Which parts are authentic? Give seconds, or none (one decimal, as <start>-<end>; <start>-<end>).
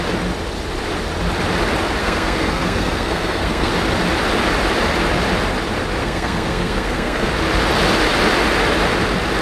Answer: 0.0-2.0; 3.7-6.0; 7.3-9.4